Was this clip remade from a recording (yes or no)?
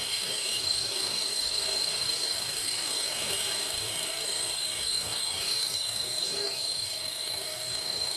yes